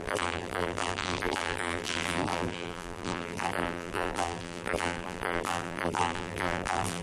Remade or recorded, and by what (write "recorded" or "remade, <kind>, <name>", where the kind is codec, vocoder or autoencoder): remade, vocoder, BigVGAN v2